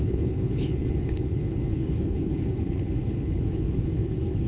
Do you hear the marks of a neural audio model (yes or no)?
yes